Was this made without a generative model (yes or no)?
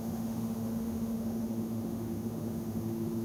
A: no